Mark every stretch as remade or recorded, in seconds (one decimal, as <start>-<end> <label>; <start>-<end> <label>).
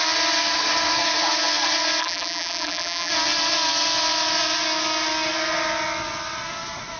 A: 0.0-2.0 recorded; 2.0-3.1 remade; 3.1-7.0 recorded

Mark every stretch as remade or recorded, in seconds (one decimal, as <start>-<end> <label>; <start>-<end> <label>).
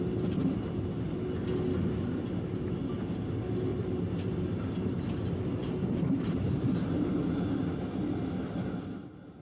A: 0.0-3.7 recorded; 3.7-4.7 remade; 4.7-5.6 recorded; 5.6-7.6 remade; 7.6-9.4 recorded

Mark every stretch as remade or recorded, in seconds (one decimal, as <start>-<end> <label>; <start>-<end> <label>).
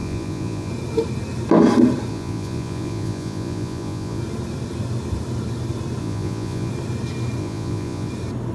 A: 0.0-0.7 remade; 0.7-2.1 recorded; 2.1-4.2 remade; 4.2-6.0 recorded; 6.0-6.7 remade; 6.7-7.4 recorded; 7.4-8.1 remade; 8.1-8.5 recorded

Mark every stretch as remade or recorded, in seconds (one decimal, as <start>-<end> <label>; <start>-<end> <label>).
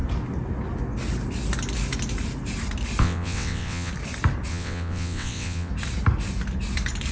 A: 0.0-3.0 recorded; 3.0-3.9 remade; 3.9-4.5 recorded; 4.5-5.7 remade; 5.7-7.1 recorded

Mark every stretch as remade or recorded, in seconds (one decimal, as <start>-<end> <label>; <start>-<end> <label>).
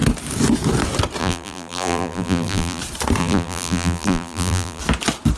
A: 0.0-1.2 recorded; 1.2-2.8 remade; 2.8-3.2 recorded; 3.2-4.8 remade; 4.8-5.4 recorded